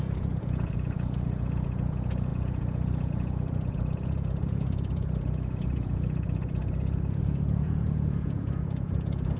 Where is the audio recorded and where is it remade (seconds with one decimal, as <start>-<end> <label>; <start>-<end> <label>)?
0.0-9.4 remade